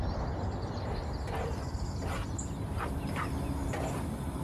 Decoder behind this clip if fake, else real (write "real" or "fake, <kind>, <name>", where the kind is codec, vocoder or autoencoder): real